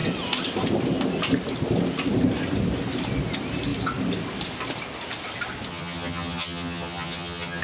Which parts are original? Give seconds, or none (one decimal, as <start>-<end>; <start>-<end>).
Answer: 0.0-5.7